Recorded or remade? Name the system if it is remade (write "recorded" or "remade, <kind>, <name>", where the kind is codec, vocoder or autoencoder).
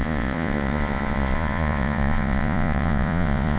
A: remade, vocoder, Vocos